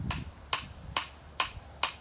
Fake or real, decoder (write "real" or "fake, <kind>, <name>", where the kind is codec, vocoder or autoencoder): real